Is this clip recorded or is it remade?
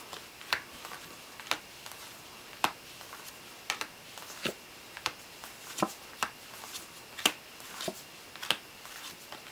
recorded